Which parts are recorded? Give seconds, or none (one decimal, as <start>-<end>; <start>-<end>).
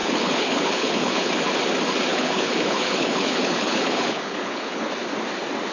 1.3-2.1; 4.9-5.7